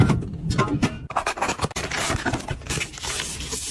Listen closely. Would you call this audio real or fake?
real